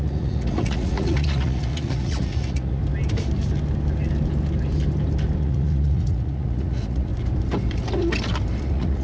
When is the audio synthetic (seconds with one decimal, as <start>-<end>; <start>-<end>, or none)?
0.0-2.8; 5.4-7.1; 8.6-9.0

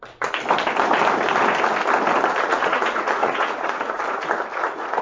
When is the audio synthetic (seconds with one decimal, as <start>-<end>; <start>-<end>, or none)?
2.5-4.0; 4.5-5.0